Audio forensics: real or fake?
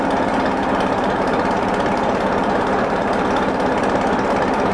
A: fake